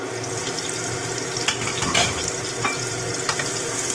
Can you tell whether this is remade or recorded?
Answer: recorded